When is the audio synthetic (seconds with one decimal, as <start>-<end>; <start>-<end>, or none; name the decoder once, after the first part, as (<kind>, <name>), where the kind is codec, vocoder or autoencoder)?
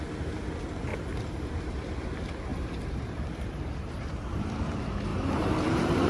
0.9-1.5 (vocoder, BigVGAN v2); 2.5-4.5; 5.1-6.1